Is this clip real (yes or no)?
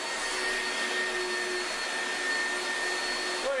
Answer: yes